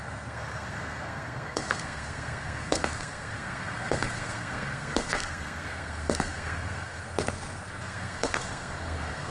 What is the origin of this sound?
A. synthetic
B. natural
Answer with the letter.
A